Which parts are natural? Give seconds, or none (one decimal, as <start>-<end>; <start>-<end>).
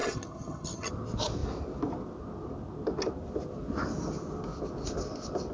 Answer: 0.9-5.5